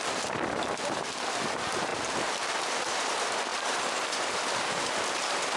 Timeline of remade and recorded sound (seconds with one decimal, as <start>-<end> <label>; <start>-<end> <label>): 0.0-3.5 recorded; 3.5-5.6 remade